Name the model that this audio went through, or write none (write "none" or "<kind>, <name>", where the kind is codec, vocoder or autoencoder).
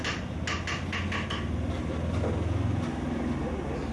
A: none